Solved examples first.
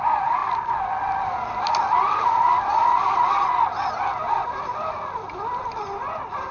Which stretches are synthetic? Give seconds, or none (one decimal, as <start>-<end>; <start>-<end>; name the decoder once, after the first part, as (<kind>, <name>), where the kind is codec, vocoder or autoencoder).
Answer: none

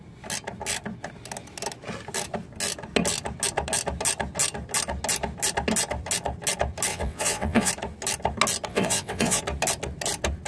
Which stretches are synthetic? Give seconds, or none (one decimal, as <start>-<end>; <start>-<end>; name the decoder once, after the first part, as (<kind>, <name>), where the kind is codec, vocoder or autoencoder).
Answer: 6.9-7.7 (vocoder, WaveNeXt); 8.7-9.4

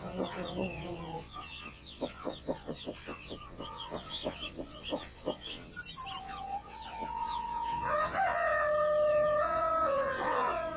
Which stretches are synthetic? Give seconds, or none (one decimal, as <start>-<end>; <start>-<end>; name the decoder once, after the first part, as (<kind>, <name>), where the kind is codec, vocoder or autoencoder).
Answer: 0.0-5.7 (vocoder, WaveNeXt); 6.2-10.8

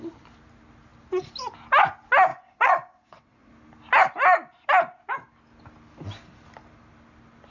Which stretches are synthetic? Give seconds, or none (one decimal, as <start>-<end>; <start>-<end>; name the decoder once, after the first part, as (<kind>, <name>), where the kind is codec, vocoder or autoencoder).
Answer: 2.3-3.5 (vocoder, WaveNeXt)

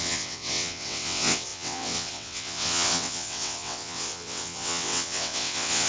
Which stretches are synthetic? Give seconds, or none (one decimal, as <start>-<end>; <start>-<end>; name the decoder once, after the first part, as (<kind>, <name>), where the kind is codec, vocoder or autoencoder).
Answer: 0.0-5.9 (vocoder, WaveNeXt)

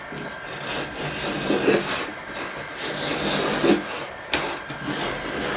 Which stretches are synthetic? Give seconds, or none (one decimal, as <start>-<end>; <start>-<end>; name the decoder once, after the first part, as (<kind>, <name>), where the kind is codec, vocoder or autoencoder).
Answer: none